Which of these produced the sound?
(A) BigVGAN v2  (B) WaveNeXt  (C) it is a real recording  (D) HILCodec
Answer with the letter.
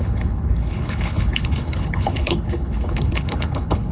D